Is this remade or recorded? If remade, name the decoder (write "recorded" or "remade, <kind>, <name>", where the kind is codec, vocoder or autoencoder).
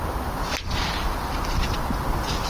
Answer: recorded